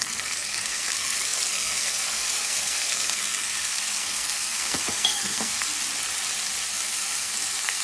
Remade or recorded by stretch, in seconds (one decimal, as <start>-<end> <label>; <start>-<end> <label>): 0.0-5.7 remade; 5.7-6.7 recorded; 6.7-7.8 remade